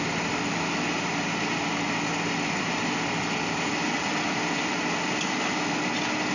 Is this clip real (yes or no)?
yes